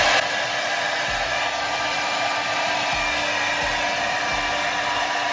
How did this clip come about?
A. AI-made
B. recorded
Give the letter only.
B